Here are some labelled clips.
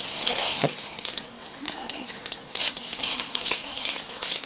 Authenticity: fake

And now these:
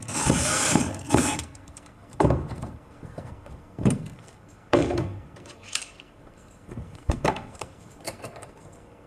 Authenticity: fake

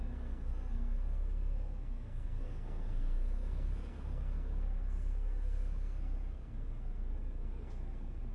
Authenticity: fake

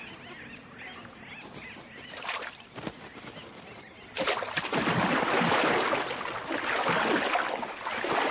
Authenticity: real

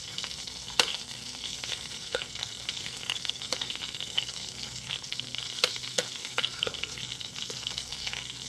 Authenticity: fake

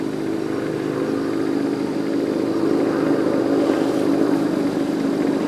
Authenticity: real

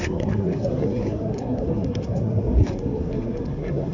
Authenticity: fake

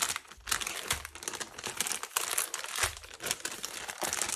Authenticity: real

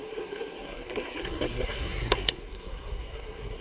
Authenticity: fake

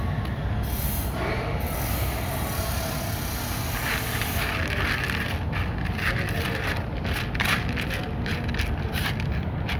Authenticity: real